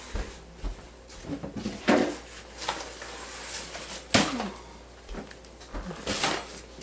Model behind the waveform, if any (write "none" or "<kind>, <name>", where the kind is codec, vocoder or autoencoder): none